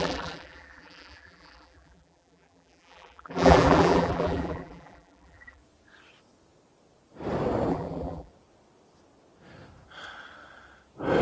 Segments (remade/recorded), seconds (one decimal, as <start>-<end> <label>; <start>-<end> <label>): 0.0-5.6 remade; 5.6-7.7 recorded; 7.7-8.3 remade; 8.3-11.2 recorded